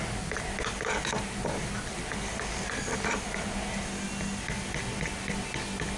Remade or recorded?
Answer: recorded